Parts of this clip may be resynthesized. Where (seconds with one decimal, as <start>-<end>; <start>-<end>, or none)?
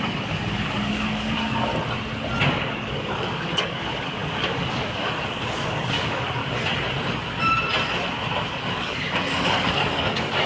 0.0-1.7; 2.5-6.4; 8.5-10.5